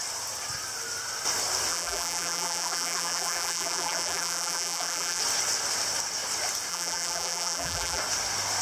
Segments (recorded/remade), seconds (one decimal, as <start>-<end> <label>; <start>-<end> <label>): 0.0-1.7 recorded; 1.7-5.2 remade; 5.2-6.7 recorded; 6.7-8.0 remade; 8.0-8.6 recorded